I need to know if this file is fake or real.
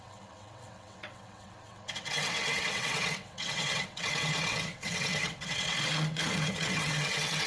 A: fake